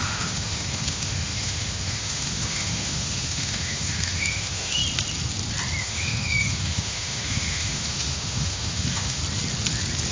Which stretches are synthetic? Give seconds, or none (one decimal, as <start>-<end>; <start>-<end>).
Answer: 0.0-4.8; 5.8-9.2